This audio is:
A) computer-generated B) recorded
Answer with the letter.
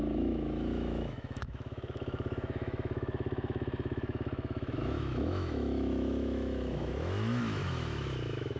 A